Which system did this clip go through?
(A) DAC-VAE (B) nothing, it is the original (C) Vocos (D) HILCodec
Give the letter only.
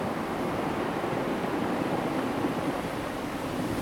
B